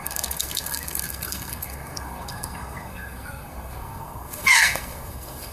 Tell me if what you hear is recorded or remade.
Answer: remade